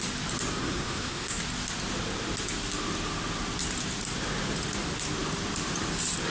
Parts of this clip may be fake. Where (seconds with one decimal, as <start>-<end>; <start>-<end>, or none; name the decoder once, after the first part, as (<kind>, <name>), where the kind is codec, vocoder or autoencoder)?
0.6-1.4 (codec, SNAC)